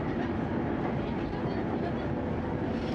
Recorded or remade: recorded